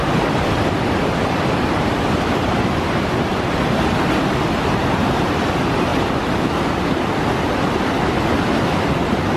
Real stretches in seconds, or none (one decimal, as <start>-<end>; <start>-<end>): 0.0-9.4